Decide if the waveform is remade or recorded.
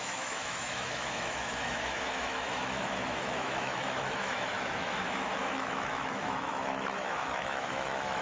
remade